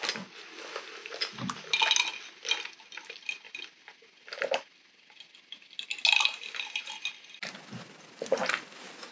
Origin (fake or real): real